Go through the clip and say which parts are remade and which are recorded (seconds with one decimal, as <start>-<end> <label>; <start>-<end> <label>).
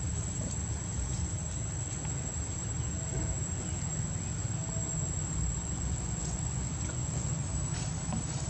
0.0-5.6 recorded; 5.6-7.3 remade; 7.3-8.5 recorded